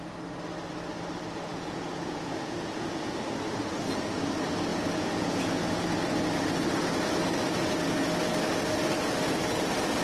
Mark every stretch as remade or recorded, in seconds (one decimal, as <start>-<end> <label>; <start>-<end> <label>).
0.0-1.5 recorded; 1.5-3.1 remade; 3.1-4.7 recorded; 4.7-5.7 remade; 5.7-10.0 recorded